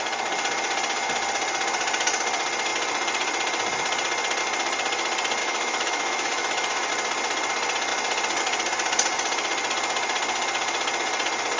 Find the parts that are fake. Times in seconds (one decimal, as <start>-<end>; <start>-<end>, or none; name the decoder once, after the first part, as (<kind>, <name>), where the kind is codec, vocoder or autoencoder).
5.4-6.9 (autoencoder, DAC-VAE)